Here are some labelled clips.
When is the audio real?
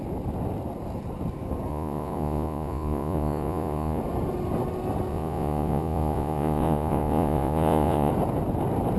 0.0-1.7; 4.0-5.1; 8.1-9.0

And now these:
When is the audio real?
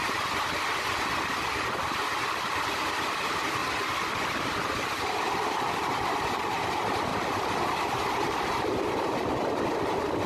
0.0-3.6; 5.7-7.1; 8.5-10.3